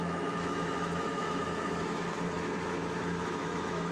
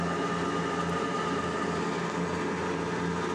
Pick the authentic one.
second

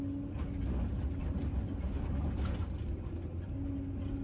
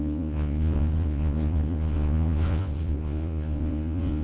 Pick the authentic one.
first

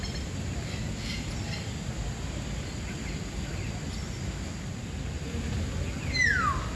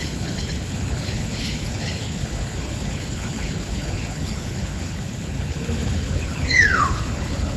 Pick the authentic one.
first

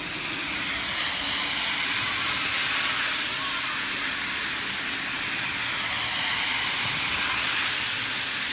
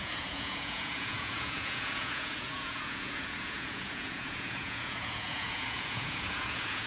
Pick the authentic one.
first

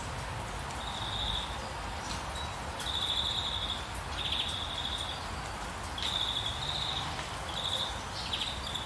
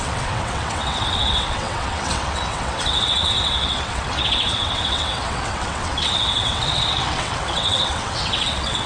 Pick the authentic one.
first